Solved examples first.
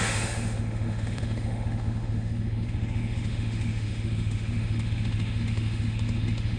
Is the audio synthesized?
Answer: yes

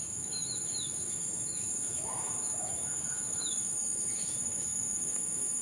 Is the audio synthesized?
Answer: yes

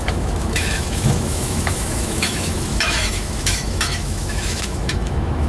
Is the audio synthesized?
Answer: yes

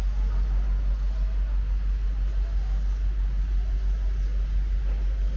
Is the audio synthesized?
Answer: no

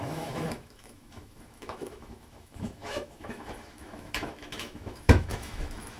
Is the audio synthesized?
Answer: yes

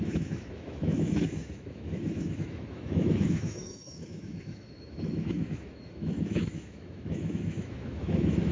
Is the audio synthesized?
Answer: yes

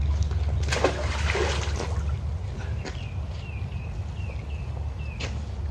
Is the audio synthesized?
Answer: no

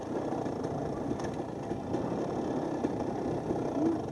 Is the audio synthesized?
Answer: no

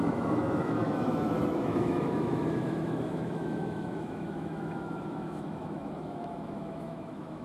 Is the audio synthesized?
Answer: yes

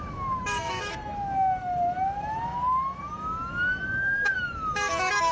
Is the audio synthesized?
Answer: yes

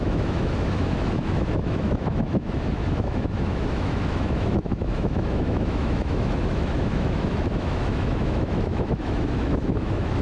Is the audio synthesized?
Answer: yes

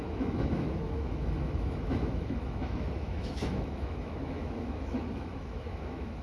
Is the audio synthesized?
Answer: yes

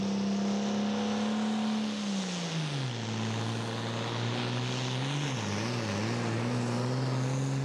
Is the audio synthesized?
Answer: no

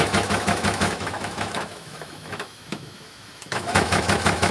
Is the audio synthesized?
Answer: yes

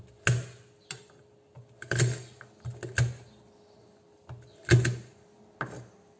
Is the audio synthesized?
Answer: no